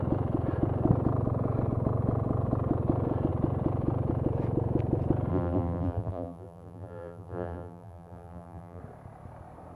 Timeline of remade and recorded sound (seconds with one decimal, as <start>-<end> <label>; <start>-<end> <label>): 0.0-5.3 recorded; 5.3-8.8 remade; 8.8-9.7 recorded